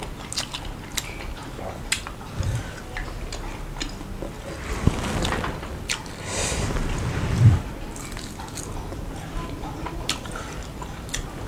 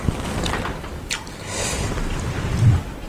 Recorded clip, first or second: first